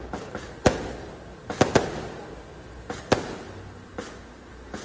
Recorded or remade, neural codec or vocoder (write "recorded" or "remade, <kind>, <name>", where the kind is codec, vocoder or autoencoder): recorded